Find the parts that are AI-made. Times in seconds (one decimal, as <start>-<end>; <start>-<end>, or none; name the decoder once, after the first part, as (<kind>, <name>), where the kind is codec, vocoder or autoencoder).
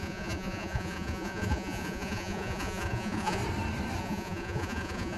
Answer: 0.0-3.4 (vocoder, Vocos); 4.0-5.2